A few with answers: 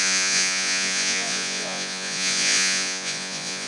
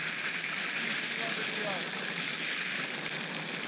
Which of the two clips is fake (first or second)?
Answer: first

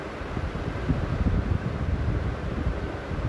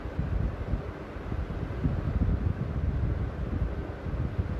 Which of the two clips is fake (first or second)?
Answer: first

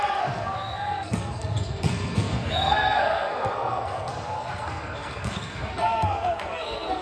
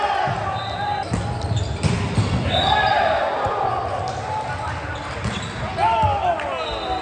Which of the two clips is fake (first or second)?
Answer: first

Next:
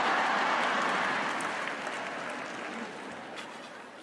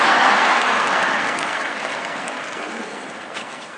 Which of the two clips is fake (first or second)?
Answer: second